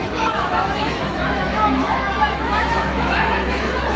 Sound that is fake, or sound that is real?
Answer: fake